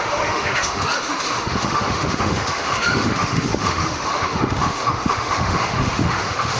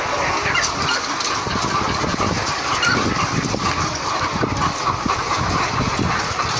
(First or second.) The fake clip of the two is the first